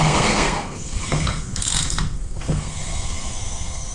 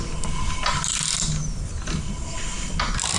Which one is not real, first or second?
first